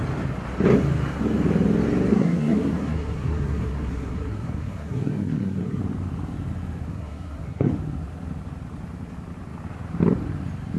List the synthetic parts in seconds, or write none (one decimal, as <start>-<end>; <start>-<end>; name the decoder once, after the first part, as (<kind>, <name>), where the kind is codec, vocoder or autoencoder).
2.1-5.8 (codec, SNAC); 6.9-7.7